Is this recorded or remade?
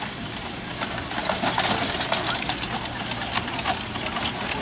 recorded